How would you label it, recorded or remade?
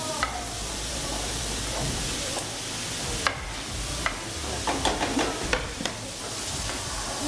remade